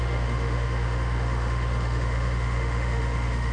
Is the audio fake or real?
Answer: fake